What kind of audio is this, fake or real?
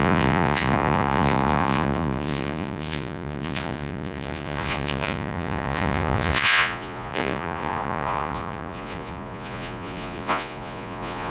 fake